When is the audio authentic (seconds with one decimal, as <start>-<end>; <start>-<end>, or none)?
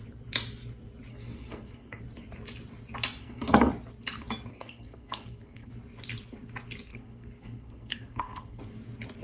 0.0-1.1; 2.0-3.2; 3.7-4.5; 5.7-6.9; 8.6-9.2